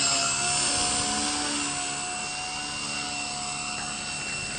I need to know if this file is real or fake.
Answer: real